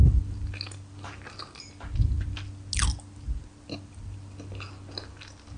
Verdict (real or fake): real